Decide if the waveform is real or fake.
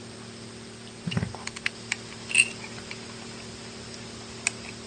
real